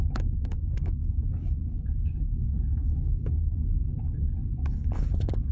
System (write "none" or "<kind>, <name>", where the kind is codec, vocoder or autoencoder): codec, HILCodec